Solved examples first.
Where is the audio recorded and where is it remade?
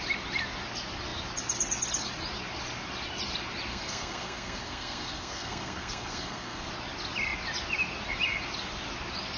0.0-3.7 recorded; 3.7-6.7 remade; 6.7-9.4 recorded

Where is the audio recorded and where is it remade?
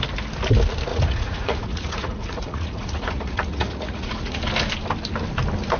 0.0-0.9 recorded; 0.9-4.4 remade; 4.4-5.8 recorded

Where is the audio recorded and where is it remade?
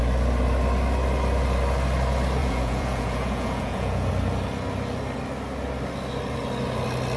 0.0-2.4 recorded; 2.4-4.1 remade; 4.1-7.2 recorded